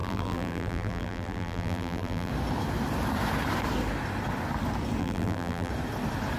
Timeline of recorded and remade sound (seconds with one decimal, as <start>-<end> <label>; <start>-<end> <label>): 0.0-2.3 remade; 2.3-5.0 recorded; 5.0-5.7 remade; 5.7-6.4 recorded